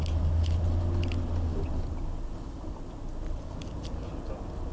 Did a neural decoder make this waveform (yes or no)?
no